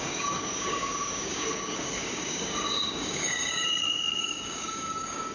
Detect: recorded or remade remade